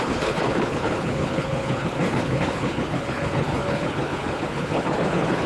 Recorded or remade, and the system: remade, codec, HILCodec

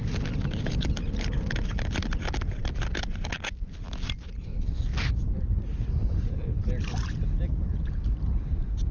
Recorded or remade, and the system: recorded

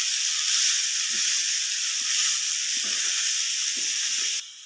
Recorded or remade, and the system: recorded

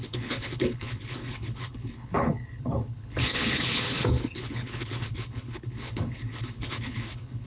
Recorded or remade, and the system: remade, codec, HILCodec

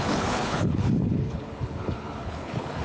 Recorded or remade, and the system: remade, codec, HILCodec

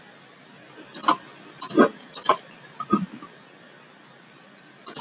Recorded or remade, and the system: recorded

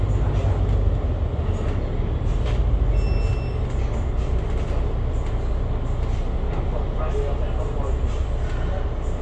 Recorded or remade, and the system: recorded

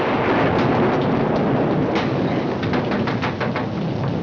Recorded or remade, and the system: recorded